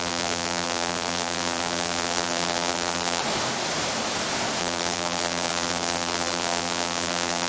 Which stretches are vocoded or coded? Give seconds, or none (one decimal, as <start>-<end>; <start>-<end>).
0.0-3.2; 4.6-7.5